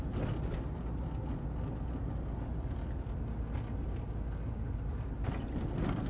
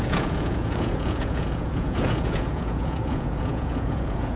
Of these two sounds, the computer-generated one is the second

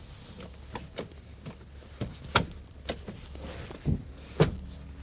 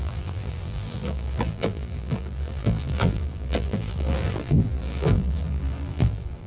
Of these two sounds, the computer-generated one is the second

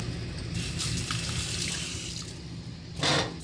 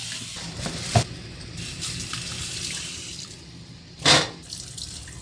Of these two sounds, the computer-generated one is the second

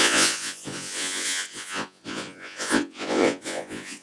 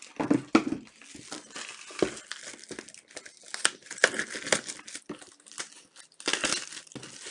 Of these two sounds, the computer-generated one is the first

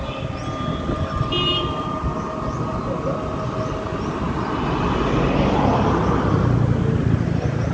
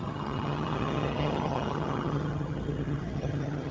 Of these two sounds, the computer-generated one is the second